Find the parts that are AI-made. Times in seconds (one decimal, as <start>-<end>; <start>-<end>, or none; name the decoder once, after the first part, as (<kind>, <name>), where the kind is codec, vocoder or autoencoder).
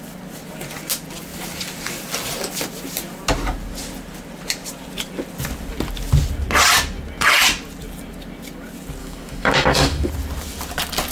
9.0-10.1 (autoencoder, DAC-VAE)